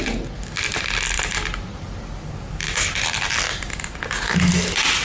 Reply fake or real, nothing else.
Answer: real